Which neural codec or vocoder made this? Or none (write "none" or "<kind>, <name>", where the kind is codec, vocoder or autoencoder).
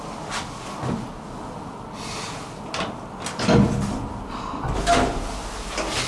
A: none